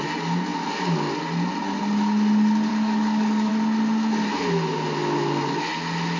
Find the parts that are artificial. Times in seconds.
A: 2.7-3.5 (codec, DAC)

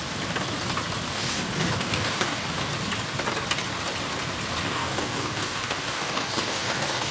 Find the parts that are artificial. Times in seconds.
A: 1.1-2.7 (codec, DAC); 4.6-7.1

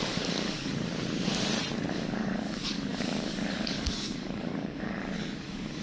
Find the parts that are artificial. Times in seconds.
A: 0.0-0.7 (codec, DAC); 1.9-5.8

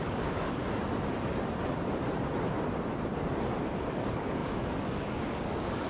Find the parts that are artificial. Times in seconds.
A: 0.0-0.6 (codec, DAC); 3.9-5.9

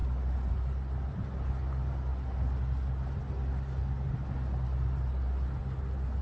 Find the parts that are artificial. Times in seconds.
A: none

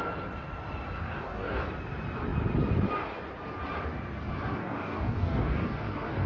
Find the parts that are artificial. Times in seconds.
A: 1.0-1.6 (codec, DAC); 4.6-6.3